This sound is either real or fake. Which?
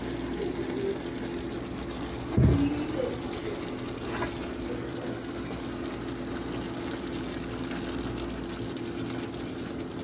real